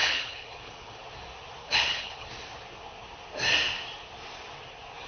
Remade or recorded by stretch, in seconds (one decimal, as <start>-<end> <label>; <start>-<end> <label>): 0.0-1.0 remade; 1.0-1.6 recorded; 1.6-2.3 remade; 2.3-5.1 recorded